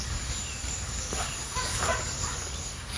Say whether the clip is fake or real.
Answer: fake